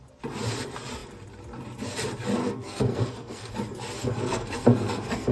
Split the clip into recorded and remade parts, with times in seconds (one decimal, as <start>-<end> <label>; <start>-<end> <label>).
0.0-2.4 recorded; 2.4-3.5 remade; 3.5-4.0 recorded; 4.0-5.3 remade